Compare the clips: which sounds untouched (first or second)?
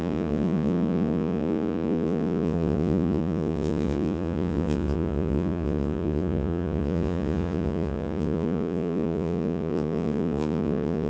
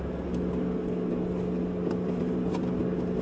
second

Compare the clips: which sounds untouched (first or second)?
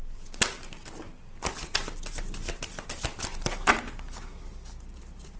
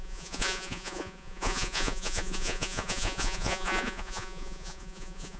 first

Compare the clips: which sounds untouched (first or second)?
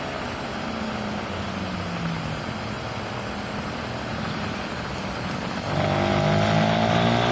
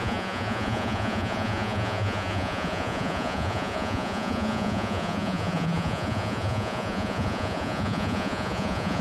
first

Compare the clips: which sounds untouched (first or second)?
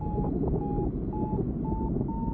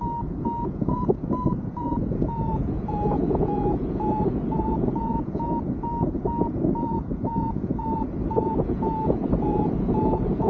first